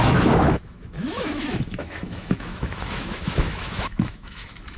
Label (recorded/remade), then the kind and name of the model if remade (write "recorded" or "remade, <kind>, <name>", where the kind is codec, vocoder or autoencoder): remade, autoencoder, DAC-VAE